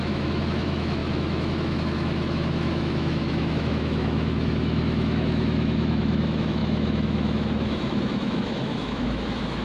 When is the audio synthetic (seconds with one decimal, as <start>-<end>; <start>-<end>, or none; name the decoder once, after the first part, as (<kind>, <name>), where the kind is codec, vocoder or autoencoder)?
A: 0.0-9.6 (autoencoder, DAC-VAE)

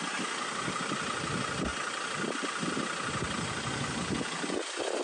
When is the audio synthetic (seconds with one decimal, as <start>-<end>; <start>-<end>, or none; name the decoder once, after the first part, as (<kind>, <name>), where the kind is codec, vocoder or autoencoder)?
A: none

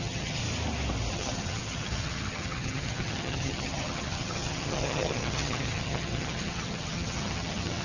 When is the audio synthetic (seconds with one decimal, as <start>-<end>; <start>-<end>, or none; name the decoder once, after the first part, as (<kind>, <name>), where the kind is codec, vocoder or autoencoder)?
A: 0.0-0.4 (vocoder, HiFi-GAN); 1.1-7.8

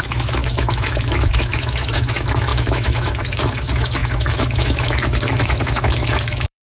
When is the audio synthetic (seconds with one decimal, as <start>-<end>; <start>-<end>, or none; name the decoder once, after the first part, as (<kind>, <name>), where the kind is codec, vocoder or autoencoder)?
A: 0.0-6.7 (autoencoder, DAC-VAE)

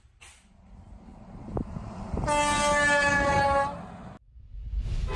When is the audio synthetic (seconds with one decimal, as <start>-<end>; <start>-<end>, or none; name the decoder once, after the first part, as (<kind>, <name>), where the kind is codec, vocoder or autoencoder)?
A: none

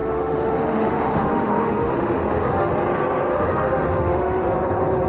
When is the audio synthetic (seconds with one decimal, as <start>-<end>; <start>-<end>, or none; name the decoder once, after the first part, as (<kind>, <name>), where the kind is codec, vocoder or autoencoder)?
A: 0.0-2.7 (autoencoder, DAC-VAE); 3.3-4.5

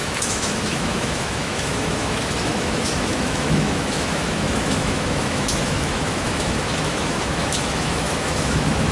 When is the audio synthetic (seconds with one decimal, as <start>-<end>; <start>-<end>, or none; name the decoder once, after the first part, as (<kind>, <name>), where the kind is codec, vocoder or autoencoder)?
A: 0.0-8.9 (autoencoder, DAC-VAE)